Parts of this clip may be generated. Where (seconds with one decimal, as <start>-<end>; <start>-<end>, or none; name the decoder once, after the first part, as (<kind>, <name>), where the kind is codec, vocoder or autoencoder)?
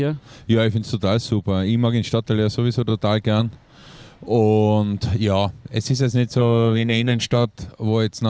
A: 6.4-7.5 (codec, SNAC)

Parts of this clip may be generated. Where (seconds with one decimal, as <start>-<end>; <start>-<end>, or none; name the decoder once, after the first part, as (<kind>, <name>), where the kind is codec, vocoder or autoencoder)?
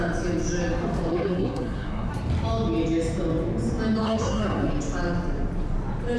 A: 1.1-2.1 (codec, SNAC); 4.0-4.7